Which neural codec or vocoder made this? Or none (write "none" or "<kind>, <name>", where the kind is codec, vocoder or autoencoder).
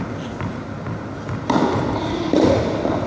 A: none